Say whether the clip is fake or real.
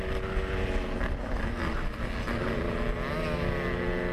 real